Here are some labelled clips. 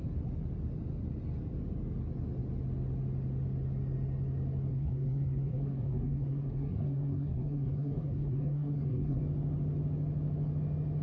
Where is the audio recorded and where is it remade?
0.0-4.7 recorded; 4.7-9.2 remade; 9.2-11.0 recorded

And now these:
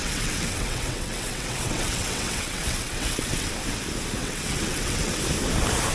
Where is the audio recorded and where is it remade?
0.0-3.5 remade; 3.5-4.2 recorded; 4.2-5.2 remade; 5.2-5.9 recorded

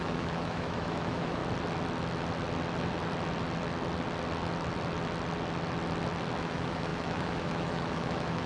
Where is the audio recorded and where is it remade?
0.0-1.4 remade; 1.4-6.4 recorded; 6.4-8.5 remade